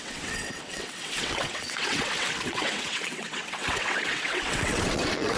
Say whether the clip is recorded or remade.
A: remade